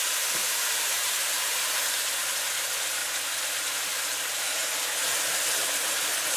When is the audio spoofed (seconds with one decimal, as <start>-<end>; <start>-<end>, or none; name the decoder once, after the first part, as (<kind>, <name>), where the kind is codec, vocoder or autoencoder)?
0.4-2.2 (vocoder, BigVGAN v2)